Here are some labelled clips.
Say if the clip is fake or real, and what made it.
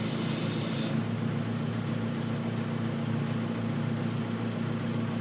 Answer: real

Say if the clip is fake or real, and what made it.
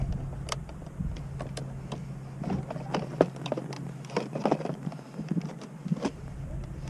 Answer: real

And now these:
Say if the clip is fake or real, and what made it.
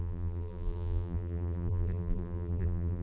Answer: fake, vocoder, BigVGAN v2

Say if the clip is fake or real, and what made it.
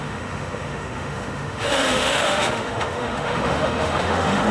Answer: fake, autoencoder, DAC-VAE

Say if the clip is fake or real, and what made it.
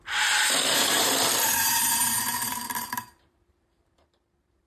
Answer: fake, vocoder, BigVGAN v2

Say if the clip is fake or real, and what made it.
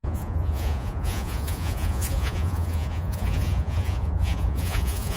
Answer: fake, vocoder, Vocos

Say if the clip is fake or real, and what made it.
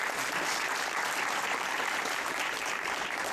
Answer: fake, vocoder, BigVGAN v2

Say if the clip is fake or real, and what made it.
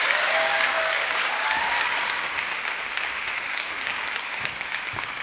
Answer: fake, codec, DAC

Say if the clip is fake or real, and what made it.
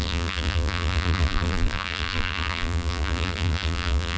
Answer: fake, vocoder, BigVGAN v2